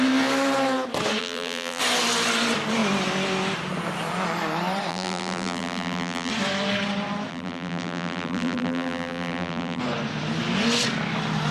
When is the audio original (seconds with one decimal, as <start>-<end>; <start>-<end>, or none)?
0.0-1.2; 1.8-4.9; 6.3-7.3; 9.8-11.5